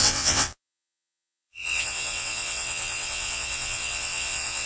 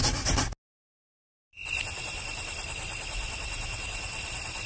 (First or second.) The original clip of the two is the second